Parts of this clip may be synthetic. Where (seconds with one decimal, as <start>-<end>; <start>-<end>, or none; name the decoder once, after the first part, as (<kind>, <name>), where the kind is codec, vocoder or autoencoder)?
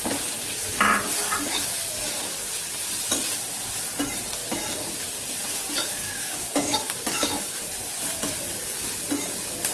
6.0-7.6 (codec, DAC)